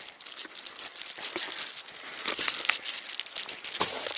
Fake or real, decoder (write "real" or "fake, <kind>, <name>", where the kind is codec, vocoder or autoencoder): real